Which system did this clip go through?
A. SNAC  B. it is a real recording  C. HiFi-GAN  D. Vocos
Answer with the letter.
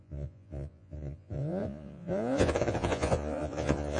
D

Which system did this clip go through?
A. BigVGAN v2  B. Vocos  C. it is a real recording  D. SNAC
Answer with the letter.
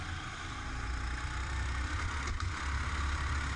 C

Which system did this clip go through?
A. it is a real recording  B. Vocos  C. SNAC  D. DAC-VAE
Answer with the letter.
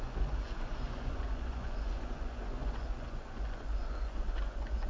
B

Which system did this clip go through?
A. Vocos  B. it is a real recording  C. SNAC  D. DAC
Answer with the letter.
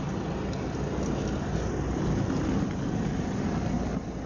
B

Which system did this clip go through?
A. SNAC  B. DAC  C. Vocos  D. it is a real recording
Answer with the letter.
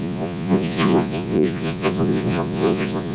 C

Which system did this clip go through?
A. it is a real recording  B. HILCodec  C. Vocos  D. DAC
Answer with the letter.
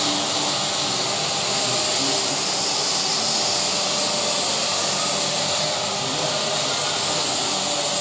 A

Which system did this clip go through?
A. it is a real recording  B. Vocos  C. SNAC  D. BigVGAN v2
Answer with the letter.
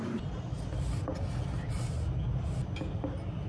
A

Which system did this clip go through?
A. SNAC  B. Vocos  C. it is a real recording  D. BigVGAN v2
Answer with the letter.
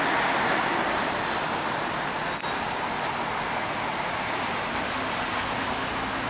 C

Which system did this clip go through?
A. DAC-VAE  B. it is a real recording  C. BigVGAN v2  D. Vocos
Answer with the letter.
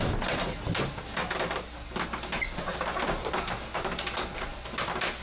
B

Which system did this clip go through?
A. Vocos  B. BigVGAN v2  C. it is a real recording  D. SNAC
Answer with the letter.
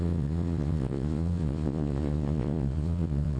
A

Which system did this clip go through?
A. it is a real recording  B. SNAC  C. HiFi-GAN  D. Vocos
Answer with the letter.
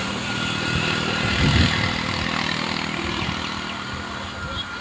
A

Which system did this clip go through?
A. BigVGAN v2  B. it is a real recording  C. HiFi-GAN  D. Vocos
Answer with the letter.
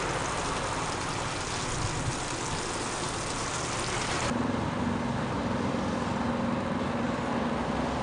B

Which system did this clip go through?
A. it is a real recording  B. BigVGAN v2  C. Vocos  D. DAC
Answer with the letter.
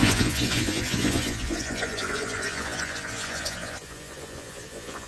C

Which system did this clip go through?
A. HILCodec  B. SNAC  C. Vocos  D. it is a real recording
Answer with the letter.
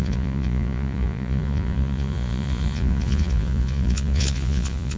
C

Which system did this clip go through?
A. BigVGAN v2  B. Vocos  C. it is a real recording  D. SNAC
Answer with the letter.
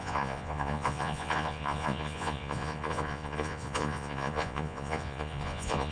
B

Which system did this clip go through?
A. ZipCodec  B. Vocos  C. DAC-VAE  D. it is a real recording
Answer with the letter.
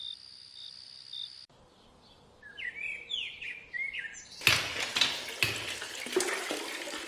D